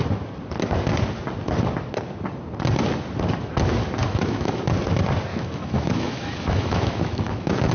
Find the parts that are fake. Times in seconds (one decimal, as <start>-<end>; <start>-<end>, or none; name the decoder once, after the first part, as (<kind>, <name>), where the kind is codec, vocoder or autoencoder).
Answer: 4.0-4.6 (autoencoder, DAC-VAE); 5.3-7.7